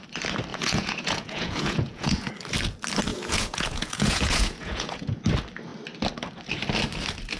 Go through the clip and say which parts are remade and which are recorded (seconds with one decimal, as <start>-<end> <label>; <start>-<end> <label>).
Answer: 0.0-0.5 recorded; 0.5-2.3 remade; 2.3-3.1 recorded; 3.1-5.2 remade; 5.2-7.4 recorded